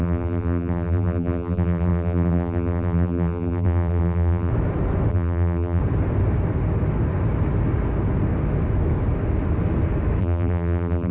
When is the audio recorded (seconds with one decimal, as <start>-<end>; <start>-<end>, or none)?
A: 4.5-5.1; 5.8-10.2